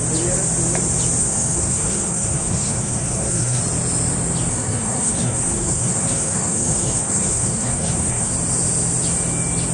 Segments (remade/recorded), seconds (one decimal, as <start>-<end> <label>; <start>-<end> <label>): 0.0-1.2 recorded; 1.2-3.6 remade; 3.6-4.5 recorded; 4.5-8.3 remade; 8.3-9.7 recorded